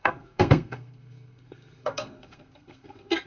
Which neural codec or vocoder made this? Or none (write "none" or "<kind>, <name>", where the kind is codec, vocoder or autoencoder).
codec, SNAC